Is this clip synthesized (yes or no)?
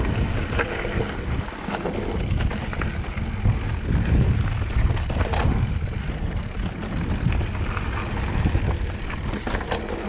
no